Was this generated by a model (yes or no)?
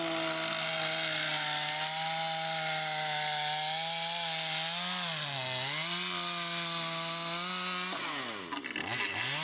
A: no